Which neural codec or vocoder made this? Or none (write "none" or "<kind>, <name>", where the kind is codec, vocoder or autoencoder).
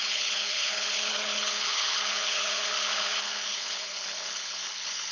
codec, HILCodec